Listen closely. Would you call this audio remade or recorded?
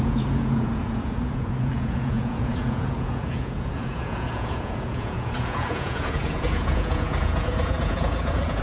remade